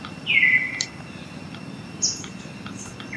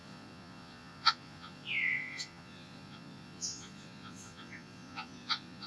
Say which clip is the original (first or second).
first